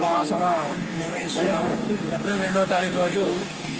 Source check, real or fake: fake